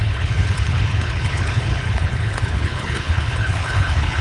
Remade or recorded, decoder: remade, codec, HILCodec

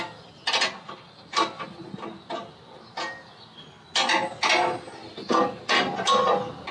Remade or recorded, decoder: recorded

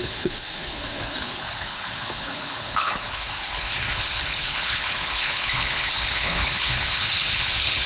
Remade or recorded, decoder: remade, codec, HILCodec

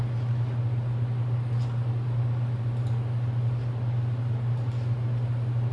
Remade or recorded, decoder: recorded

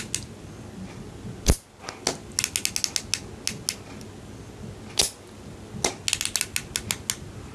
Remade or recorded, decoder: recorded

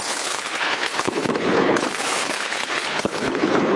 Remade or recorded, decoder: remade, codec, HILCodec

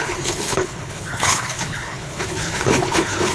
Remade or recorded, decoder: remade, codec, HILCodec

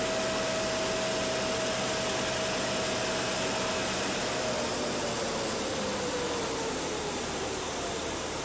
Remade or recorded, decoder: recorded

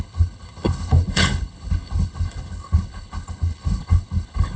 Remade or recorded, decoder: remade, codec, HILCodec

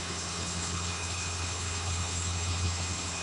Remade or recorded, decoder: remade, codec, HILCodec